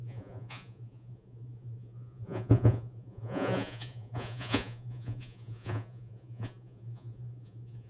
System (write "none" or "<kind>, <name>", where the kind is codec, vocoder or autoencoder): vocoder, Vocos